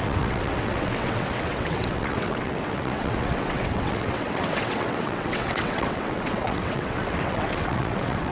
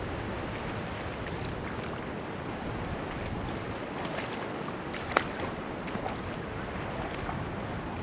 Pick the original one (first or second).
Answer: second